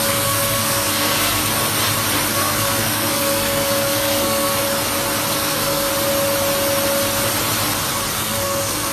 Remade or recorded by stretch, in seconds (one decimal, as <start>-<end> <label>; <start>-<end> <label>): 0.0-1.4 remade; 1.4-2.3 recorded; 2.3-4.6 remade; 4.6-5.3 recorded; 5.3-5.9 remade; 5.9-8.1 recorded; 8.1-8.9 remade